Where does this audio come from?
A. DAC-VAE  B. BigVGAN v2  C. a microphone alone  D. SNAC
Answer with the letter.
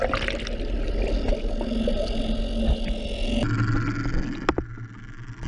C